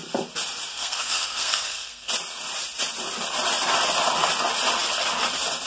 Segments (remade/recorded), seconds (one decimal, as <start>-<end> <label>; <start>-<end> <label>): 0.0-0.7 recorded; 0.7-2.1 remade; 2.1-5.7 recorded